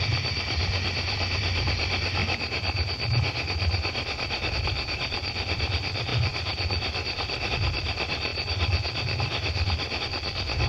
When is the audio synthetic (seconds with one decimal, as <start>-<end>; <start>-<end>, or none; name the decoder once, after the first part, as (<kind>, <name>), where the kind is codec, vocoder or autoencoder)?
0.0-2.2 (vocoder, BigVGAN v2); 4.5-10.7